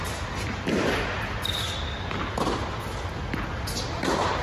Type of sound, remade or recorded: recorded